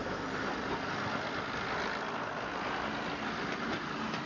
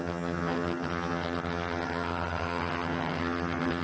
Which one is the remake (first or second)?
second